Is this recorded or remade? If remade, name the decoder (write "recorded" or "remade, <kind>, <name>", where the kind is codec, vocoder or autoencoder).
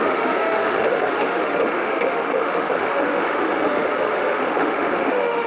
remade, autoencoder, DAC-VAE